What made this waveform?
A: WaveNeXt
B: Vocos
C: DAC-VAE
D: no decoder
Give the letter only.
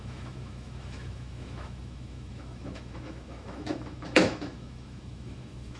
C